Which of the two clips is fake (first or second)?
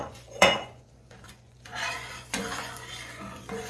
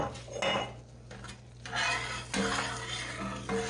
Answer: first